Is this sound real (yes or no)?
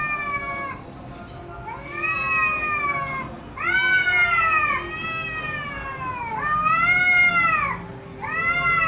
yes